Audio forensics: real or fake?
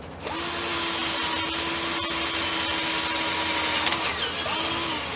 real